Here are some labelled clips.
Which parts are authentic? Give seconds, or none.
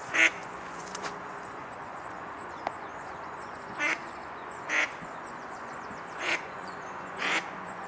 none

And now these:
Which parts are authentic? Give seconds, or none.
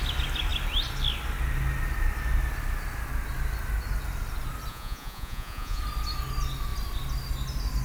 0.0-4.7; 5.8-7.8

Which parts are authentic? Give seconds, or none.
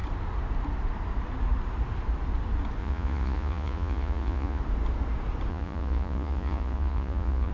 0.0-2.8; 4.6-5.5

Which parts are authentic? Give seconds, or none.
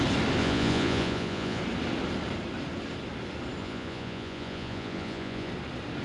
0.0-0.4; 1.6-3.6; 5.5-6.0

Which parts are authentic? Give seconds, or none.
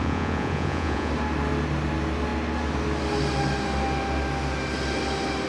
1.1-5.5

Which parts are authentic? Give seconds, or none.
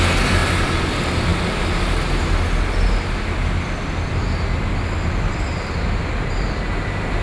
0.0-7.2